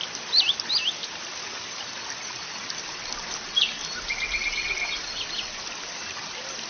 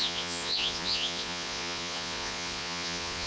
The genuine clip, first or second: first